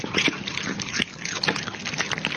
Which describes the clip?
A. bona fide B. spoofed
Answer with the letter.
A